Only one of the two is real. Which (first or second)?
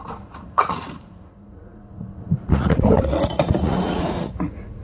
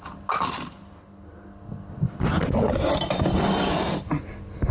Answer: second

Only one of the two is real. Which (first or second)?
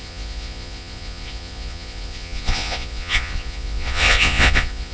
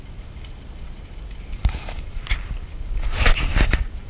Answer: second